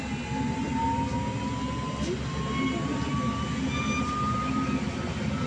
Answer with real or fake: real